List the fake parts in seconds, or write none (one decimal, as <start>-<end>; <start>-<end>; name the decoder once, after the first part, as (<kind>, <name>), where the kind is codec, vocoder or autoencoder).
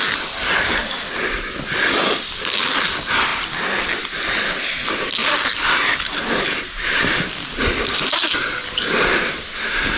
5.2-8.4 (vocoder, BigVGAN v2); 9.1-10.0